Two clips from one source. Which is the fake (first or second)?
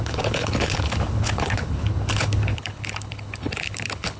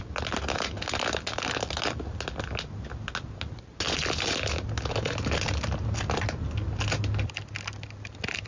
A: first